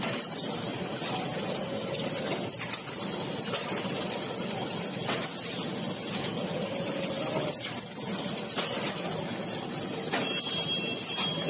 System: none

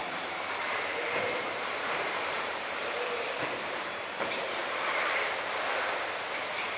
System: vocoder, BigVGAN v2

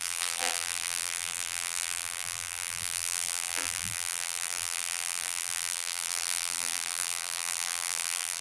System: vocoder, BigVGAN v2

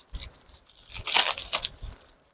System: vocoder, BigVGAN v2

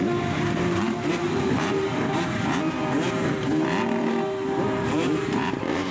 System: vocoder, BigVGAN v2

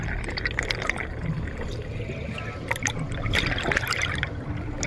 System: none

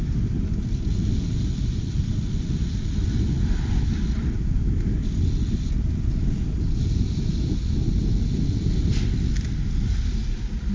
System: none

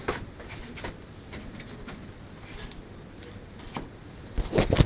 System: vocoder, BigVGAN v2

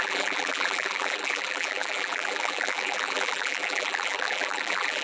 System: vocoder, BigVGAN v2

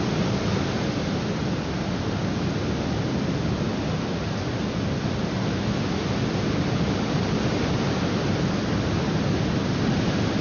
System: none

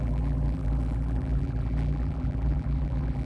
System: vocoder, BigVGAN v2